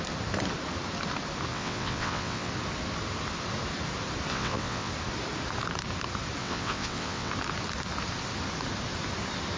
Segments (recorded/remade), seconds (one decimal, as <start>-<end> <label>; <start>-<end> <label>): 0.0-1.5 recorded; 1.5-2.5 remade; 2.5-4.3 recorded; 4.3-4.9 remade; 4.9-6.4 recorded; 6.4-7.3 remade; 7.3-9.6 recorded